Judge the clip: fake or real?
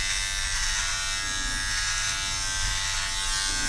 real